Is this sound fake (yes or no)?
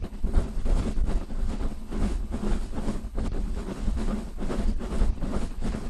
yes